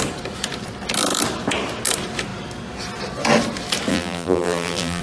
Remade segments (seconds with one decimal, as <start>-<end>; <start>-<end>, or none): 3.9-5.0